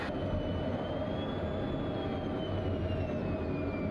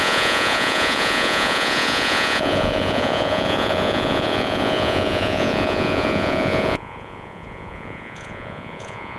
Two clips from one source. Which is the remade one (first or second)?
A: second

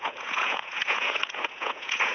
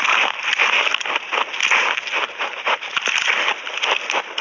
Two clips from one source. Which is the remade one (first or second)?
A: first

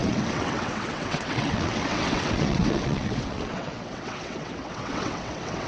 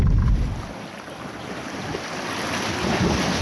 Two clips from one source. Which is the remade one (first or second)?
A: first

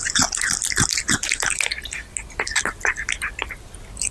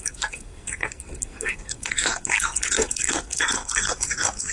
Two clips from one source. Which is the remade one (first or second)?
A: second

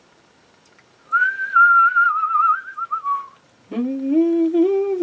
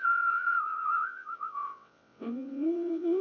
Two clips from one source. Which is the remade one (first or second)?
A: second